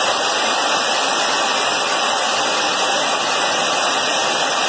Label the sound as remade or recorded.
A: recorded